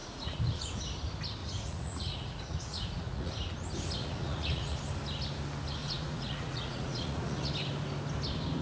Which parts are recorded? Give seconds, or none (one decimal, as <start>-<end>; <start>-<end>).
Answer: 0.8-1.4; 3.3-4.0; 4.8-5.8; 7.5-8.6